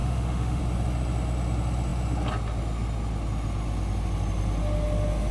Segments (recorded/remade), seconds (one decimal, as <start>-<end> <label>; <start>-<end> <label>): 0.0-0.6 remade; 0.6-5.3 recorded